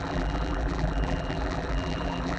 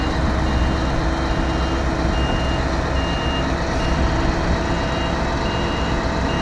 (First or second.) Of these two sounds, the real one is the second